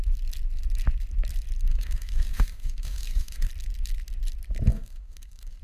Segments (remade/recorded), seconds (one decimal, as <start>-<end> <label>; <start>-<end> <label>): 0.0-1.7 recorded; 1.7-3.5 remade; 3.5-4.7 recorded; 4.7-5.6 remade